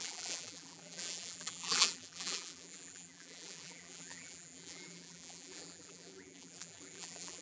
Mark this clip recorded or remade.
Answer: remade